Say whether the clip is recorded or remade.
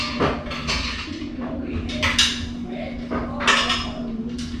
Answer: recorded